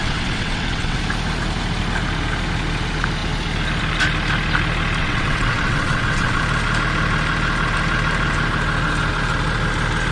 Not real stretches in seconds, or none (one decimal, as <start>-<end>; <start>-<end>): 0.0-1.0; 5.0-6.4